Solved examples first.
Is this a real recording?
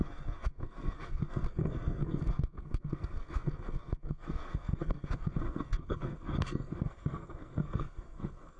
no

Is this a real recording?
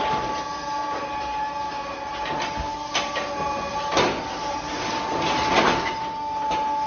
yes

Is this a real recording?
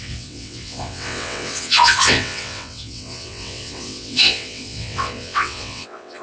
no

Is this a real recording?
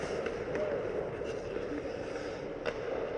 yes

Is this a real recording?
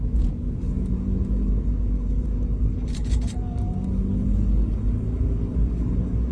no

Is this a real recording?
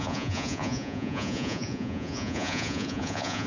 no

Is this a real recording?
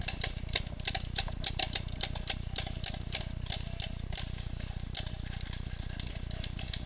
yes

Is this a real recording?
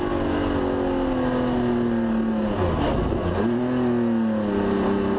yes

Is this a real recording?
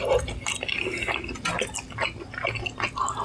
yes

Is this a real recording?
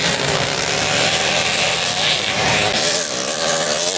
no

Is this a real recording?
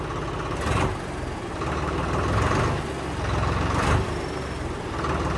yes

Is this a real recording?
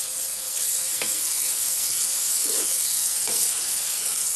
no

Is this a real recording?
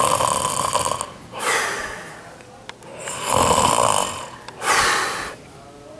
yes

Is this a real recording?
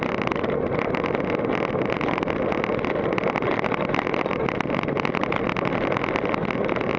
yes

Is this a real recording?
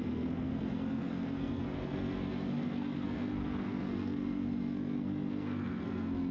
no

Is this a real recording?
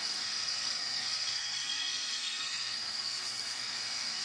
no